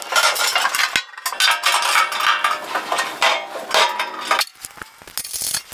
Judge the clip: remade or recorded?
recorded